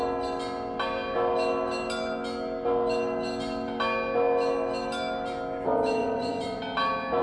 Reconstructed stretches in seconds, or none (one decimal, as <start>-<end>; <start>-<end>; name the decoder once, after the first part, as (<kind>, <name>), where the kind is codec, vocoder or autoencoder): 6.0-6.6 (vocoder, Vocos)